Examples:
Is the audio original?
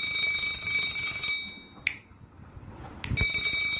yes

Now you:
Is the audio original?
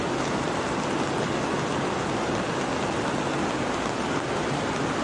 yes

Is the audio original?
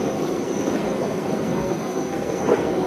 no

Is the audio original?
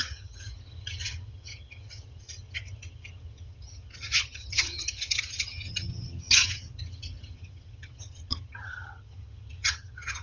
no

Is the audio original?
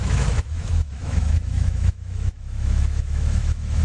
no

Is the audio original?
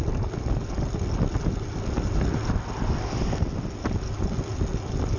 yes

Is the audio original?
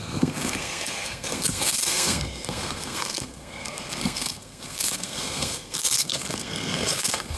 no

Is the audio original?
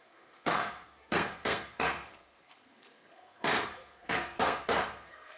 no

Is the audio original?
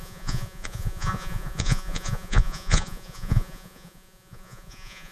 no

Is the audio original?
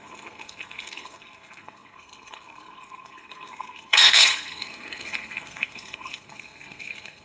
no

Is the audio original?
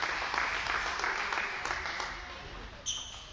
yes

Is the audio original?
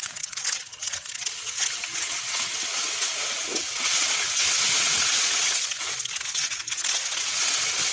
no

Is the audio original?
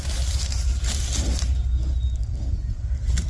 yes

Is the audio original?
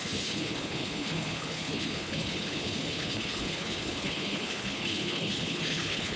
no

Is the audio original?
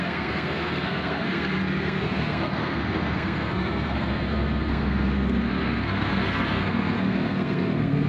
no